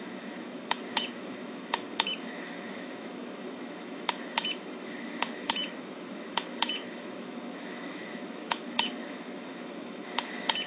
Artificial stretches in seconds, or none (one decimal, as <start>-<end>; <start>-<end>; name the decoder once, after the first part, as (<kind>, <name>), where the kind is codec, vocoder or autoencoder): 0.0-10.7 (autoencoder, DAC-VAE)